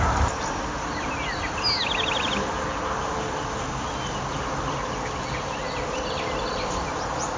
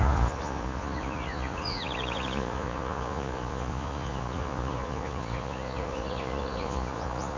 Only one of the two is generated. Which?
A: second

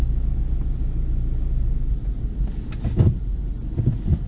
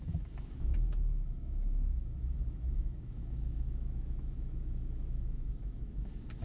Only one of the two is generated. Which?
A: second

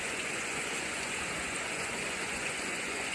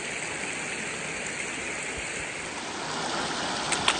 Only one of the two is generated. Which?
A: first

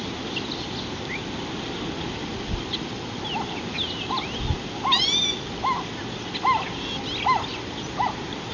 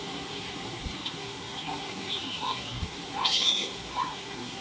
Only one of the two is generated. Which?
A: second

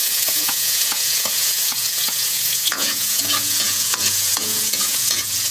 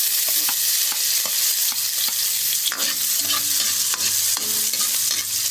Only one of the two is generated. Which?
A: first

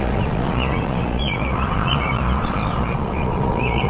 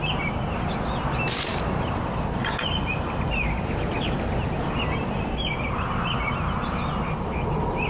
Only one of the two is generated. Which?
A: first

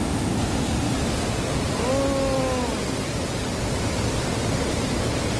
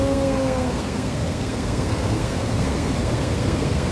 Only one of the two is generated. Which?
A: second